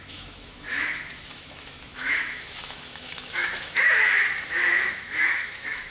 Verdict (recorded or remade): remade